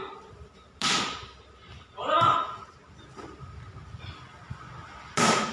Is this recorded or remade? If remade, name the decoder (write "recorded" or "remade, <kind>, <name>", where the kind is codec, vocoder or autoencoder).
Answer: recorded